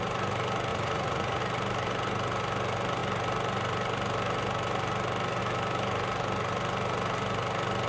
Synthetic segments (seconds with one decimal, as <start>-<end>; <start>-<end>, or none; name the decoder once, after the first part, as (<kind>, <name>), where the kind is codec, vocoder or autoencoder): 0.7-1.4 (vocoder, Vocos)